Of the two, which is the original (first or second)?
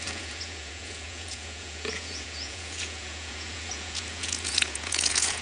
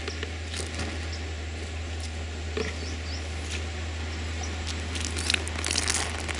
second